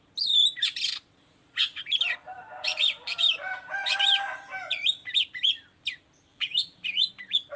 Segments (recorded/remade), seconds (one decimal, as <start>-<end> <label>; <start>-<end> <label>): 0.0-2.7 recorded; 2.7-3.3 remade; 3.3-6.3 recorded; 6.3-7.1 remade; 7.1-7.6 recorded